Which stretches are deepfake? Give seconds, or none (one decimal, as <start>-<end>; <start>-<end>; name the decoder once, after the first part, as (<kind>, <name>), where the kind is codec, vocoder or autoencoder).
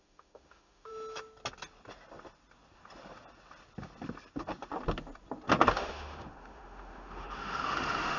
0.0-0.9 (autoencoder, DAC-VAE); 5.7-8.2